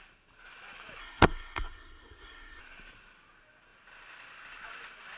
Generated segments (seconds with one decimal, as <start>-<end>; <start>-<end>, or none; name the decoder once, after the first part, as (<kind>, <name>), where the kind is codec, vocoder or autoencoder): 1.0-2.6 (codec, SNAC)